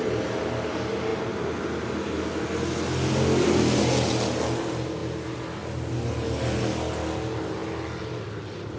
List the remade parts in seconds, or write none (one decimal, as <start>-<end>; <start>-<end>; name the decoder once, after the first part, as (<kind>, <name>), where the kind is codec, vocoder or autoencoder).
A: none